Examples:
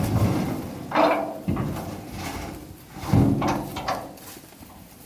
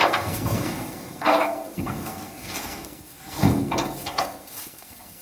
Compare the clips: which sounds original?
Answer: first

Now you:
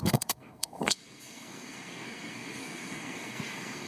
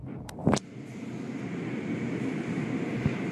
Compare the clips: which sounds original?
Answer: second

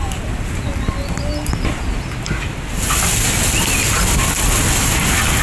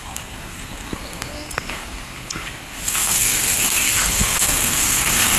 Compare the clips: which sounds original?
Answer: first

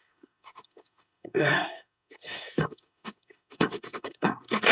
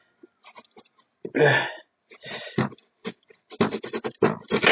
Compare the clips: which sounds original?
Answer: second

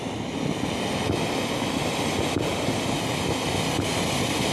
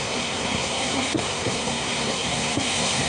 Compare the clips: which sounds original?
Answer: first